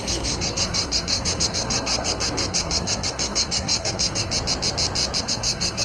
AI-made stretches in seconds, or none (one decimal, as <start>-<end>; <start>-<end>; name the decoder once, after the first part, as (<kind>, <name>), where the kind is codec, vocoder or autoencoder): 0.0-4.3 (codec, SNAC); 5.2-5.8